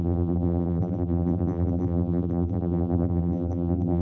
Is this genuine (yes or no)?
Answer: no